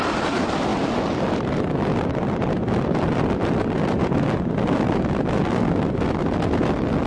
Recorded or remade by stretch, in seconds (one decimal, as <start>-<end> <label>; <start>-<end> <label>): 0.0-0.7 recorded; 0.7-5.0 remade; 5.0-7.1 recorded